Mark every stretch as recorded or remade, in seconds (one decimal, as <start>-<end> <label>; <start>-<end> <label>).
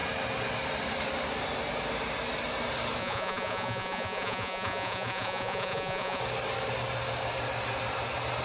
0.0-3.0 recorded; 3.0-6.2 remade; 6.2-8.4 recorded